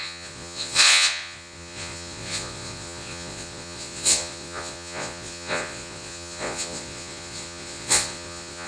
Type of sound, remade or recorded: remade